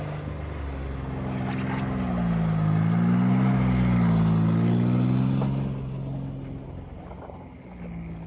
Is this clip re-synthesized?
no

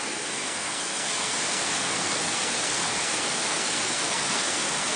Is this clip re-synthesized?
yes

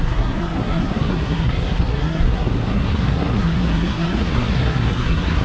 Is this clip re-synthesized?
yes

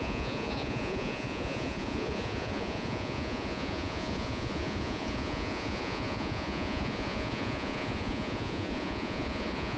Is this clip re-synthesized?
yes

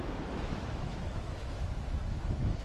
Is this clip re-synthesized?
yes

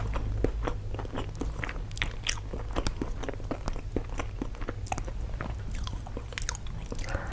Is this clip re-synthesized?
no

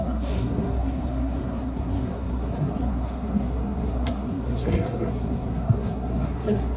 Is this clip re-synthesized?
yes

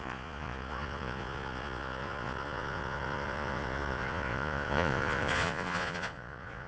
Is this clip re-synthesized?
yes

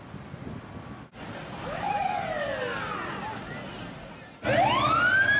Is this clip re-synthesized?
no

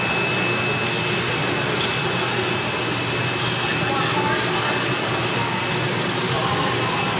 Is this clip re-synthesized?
no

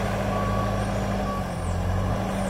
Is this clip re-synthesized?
no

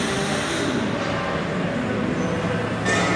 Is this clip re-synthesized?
no